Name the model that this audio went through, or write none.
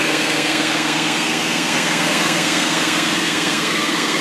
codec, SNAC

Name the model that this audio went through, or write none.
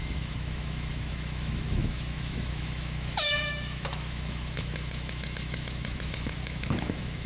autoencoder, DAC-VAE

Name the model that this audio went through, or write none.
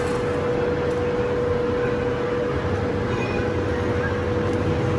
none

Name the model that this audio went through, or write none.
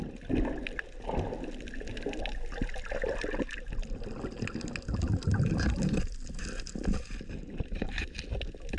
none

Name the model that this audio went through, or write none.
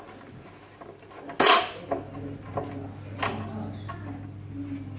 none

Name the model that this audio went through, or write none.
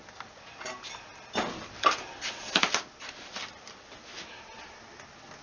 none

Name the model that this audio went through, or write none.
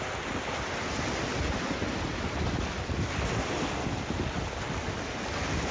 none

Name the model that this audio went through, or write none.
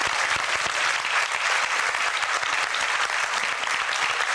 none